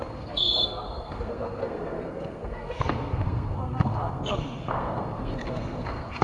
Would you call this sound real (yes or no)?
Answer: no